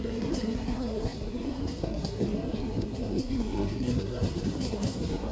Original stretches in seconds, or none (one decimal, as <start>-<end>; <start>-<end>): none